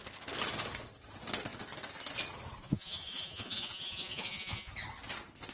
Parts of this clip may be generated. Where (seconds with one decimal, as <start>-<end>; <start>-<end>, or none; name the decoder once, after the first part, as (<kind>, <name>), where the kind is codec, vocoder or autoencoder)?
2.6-4.7 (vocoder, Vocos)